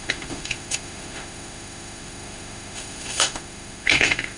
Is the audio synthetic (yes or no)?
yes